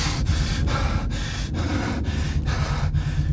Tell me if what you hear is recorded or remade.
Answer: recorded